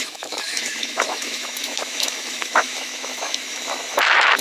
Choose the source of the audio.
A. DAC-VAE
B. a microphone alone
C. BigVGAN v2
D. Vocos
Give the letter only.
A